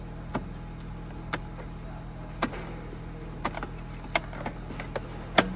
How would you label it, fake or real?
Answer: real